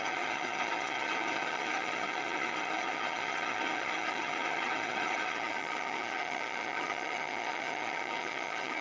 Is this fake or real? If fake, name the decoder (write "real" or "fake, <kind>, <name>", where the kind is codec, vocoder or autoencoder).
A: fake, vocoder, HiFi-GAN